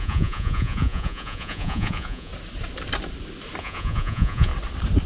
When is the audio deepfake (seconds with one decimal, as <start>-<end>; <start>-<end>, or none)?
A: 0.0-2.3; 3.6-4.5